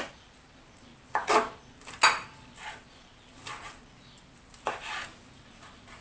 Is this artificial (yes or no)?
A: no